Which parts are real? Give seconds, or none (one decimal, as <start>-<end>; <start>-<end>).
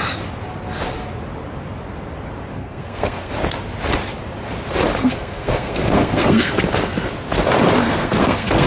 0.0-2.6; 3.3-5.0; 6.5-7.8